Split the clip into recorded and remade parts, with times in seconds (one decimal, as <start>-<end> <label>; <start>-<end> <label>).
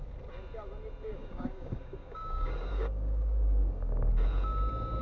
0.0-1.1 recorded; 1.1-4.1 remade; 4.1-5.0 recorded